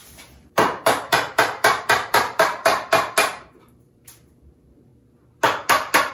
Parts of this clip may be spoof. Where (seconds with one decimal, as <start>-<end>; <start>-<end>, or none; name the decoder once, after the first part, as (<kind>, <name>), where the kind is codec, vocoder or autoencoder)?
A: 0.0-2.7 (vocoder, BigVGAN v2); 3.6-4.9